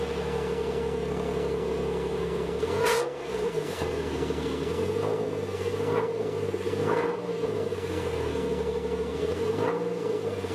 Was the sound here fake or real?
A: fake